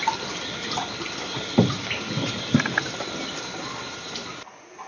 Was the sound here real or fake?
real